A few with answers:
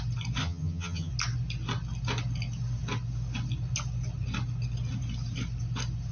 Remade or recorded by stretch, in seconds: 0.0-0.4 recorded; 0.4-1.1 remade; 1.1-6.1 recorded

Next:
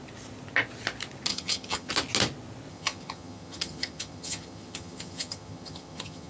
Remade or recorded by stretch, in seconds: 0.0-1.3 recorded; 1.3-1.9 remade; 1.9-2.7 recorded; 2.7-6.3 remade

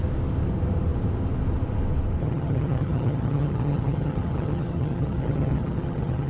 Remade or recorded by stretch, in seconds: 0.0-2.2 recorded; 2.2-6.3 remade

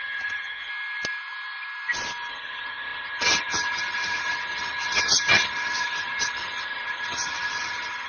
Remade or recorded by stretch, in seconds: 0.0-0.7 remade; 0.7-2.3 recorded; 2.3-8.1 remade

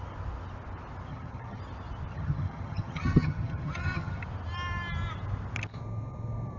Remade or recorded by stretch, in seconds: 0.0-1.1 recorded; 1.1-1.6 remade; 1.6-2.1 recorded; 2.1-4.2 remade; 4.2-6.6 recorded

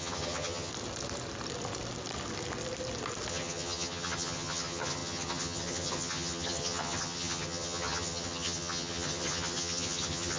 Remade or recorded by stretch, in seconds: 0.0-0.7 remade; 0.7-3.3 recorded; 3.3-10.4 remade

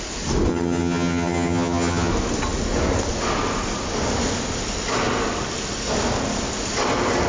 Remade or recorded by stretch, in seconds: 0.0-0.5 recorded; 0.5-2.1 remade; 2.1-7.3 recorded